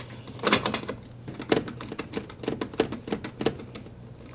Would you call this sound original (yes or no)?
yes